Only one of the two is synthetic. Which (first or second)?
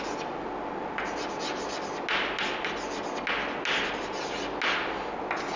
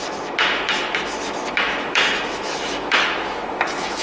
second